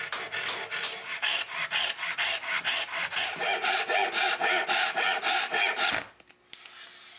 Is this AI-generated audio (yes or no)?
no